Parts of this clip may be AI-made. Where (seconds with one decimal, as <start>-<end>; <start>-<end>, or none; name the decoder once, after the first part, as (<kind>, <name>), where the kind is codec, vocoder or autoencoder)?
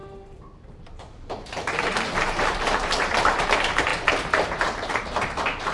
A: 0.0-5.7 (vocoder, BigVGAN v2)